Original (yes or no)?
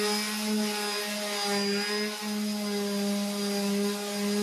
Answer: yes